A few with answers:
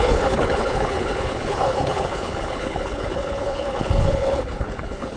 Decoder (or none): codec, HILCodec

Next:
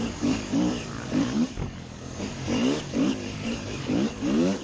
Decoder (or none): codec, DAC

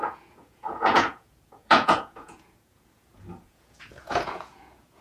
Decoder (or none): vocoder, Vocos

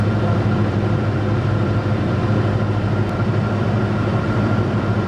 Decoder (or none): vocoder, BigVGAN v2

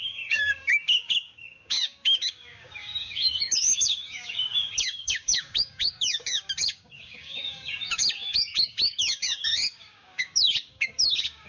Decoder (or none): codec, DAC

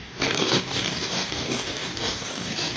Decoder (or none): codec, DAC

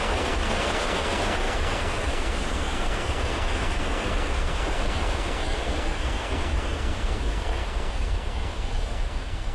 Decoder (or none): codec, SNAC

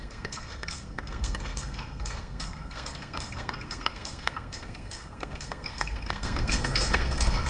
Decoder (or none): codec, SNAC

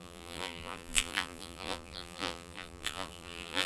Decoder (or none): vocoder, BigVGAN v2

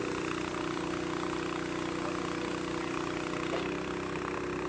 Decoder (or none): none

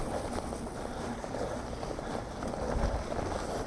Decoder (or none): none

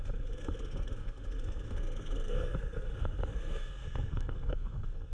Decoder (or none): codec, SNAC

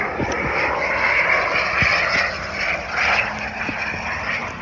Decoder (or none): none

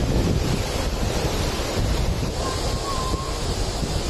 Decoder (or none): none